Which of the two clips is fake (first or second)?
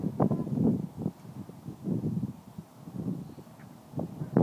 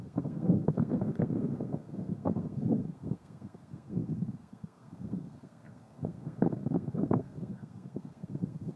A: second